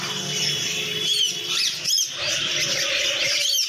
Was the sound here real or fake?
real